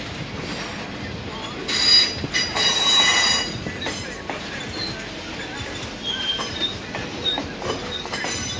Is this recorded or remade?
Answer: recorded